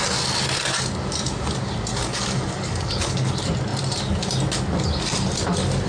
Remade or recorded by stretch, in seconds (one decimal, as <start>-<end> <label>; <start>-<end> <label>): 0.0-1.9 recorded; 1.9-3.3 remade; 3.3-5.9 recorded